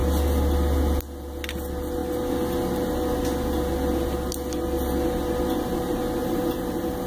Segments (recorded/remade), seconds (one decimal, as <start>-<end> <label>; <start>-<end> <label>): 0.0-6.2 recorded; 6.2-7.1 remade